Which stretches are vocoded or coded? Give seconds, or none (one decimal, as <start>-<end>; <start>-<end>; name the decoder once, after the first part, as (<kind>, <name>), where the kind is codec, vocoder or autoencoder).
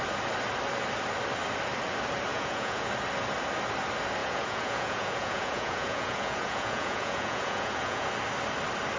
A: 2.3-2.9 (vocoder, Vocos); 4.2-8.1